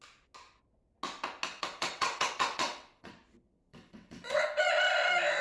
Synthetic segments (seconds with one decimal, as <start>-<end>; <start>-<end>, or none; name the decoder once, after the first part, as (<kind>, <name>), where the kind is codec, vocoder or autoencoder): 1.5-3.1 (vocoder, WaveNeXt); 3.7-4.7

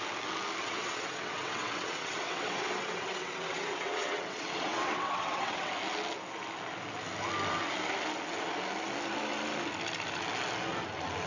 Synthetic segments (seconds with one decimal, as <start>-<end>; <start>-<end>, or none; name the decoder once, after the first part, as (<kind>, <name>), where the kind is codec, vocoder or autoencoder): 0.6-5.7 (vocoder, WaveNeXt)

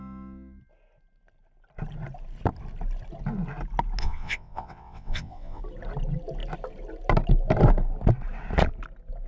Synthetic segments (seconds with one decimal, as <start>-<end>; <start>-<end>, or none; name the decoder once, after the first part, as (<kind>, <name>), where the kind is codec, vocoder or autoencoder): 4.0-5.6 (vocoder, WaveNeXt)

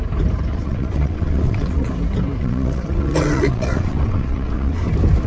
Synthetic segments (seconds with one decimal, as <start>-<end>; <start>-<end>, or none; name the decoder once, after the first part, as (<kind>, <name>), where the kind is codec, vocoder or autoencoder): 0.5-1.9 (vocoder, WaveNeXt); 2.4-4.8